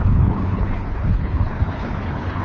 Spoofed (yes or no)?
yes